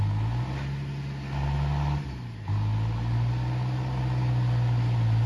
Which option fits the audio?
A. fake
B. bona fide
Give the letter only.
B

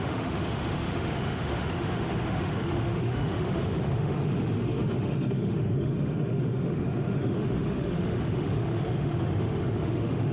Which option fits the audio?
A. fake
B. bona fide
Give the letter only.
A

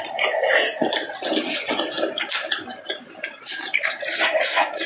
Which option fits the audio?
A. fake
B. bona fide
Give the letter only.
B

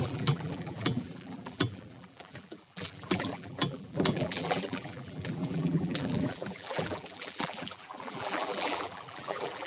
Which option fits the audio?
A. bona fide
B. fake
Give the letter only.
B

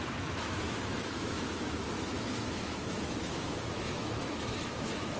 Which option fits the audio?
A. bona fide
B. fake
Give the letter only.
B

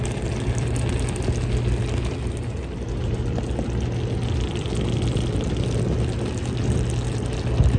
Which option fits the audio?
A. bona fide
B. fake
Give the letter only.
A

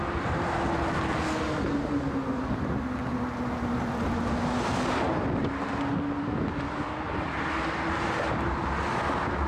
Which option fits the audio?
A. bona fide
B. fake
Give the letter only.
A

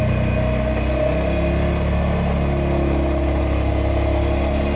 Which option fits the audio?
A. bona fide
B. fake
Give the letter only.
A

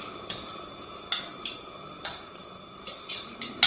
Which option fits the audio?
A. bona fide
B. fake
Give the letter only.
A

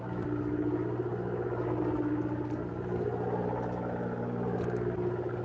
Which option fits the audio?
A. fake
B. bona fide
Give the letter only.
B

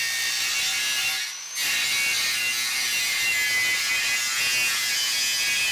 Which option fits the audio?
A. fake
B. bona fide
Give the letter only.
B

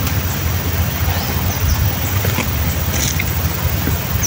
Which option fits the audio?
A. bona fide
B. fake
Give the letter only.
A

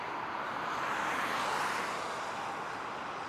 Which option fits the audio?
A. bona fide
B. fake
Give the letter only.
A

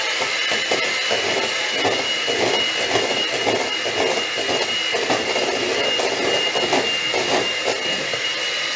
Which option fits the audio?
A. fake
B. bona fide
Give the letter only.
B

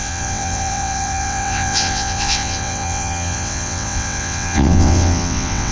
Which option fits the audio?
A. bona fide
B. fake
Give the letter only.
B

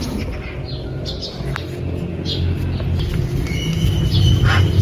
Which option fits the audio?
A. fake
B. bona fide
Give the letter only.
B